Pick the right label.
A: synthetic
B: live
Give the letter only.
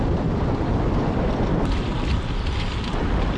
A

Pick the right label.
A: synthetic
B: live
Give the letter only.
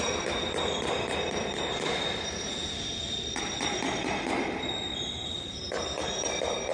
B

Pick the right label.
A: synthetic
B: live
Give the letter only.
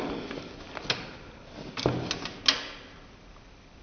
B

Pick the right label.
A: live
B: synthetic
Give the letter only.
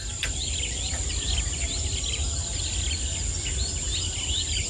A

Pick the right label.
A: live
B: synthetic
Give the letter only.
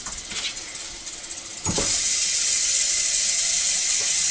A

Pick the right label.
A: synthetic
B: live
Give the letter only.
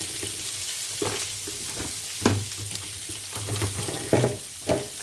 B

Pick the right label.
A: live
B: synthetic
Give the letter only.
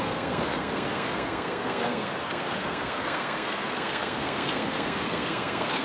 B